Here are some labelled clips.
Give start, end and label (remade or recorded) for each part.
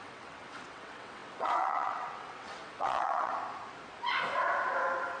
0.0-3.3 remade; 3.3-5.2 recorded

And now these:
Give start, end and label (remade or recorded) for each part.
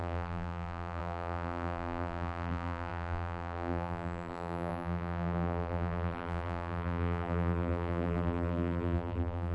0.0-9.5 remade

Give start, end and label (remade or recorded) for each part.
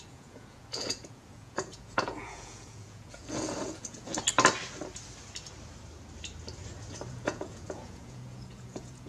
0.0-4.1 remade; 4.1-7.1 recorded; 7.1-9.1 remade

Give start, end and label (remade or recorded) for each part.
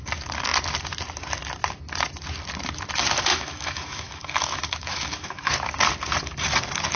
0.0-3.3 recorded; 3.3-5.5 remade; 5.5-7.0 recorded